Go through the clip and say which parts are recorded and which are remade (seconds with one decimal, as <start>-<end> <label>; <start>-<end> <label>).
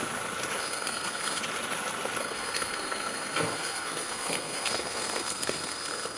0.0-0.6 recorded; 0.6-1.4 remade; 1.4-2.2 recorded; 2.2-6.2 remade